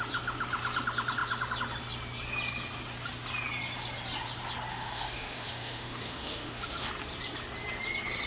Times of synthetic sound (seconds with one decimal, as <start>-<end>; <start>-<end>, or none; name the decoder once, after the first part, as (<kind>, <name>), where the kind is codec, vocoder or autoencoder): 4.7-6.9 (autoencoder, DAC-VAE)